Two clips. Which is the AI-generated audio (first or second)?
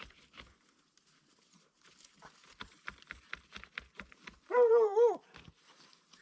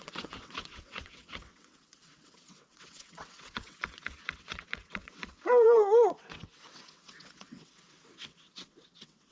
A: second